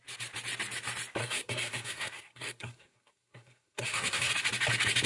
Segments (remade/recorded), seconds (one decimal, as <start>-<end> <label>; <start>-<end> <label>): 0.0-1.2 recorded; 1.2-4.3 remade; 4.3-5.1 recorded